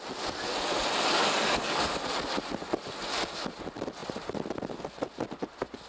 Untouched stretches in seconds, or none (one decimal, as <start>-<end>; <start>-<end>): 0.0-1.2; 1.9-5.9